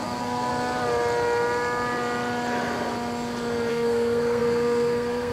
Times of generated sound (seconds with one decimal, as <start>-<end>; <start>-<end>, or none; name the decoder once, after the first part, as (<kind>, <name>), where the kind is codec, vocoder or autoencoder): 0.0-0.5 (codec, SNAC); 3.7-5.3